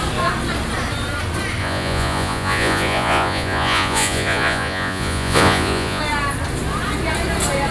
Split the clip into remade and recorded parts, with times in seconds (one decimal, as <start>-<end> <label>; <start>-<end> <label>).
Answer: 0.0-1.6 recorded; 1.6-6.0 remade; 6.0-7.7 recorded